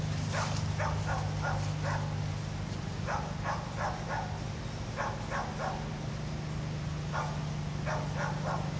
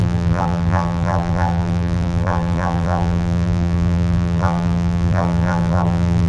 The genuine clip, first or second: first